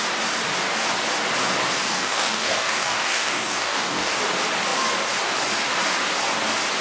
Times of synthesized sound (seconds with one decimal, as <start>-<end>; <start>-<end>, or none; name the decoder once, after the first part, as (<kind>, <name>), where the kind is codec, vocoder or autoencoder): 1.9-4.2 (codec, DAC)